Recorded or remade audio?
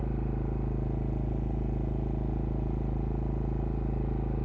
recorded